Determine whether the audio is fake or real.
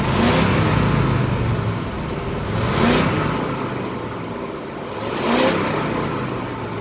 real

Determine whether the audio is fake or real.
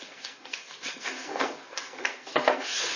fake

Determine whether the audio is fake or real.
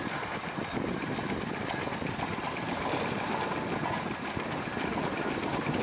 real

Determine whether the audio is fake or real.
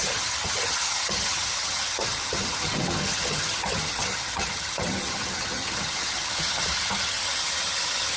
fake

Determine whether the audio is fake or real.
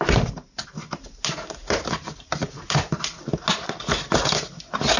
real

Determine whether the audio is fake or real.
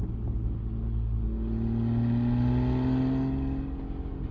real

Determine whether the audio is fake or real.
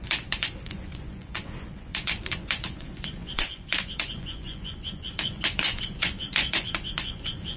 fake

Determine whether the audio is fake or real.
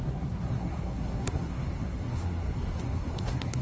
fake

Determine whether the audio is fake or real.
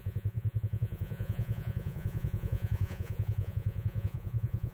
fake